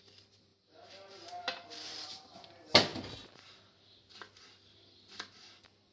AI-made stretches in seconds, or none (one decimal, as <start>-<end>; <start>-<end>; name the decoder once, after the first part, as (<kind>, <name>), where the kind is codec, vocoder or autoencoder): none